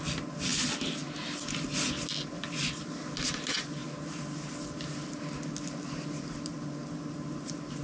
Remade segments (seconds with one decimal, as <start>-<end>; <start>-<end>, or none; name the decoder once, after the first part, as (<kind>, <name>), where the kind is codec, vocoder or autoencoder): none